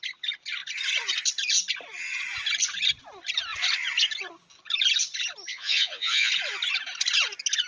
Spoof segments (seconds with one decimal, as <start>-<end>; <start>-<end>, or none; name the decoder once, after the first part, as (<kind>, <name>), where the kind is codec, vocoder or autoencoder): 5.5-6.3 (vocoder, Vocos)